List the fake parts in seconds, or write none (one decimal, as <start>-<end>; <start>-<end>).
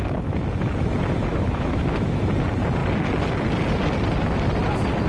1.3-2.2